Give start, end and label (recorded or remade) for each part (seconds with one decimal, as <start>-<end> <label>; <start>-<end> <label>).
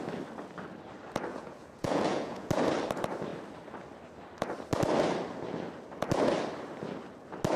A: 0.0-1.3 recorded; 1.3-2.5 remade; 2.5-7.6 recorded